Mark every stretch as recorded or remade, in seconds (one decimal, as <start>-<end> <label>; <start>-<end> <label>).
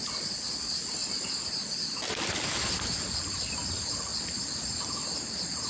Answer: 0.0-5.7 recorded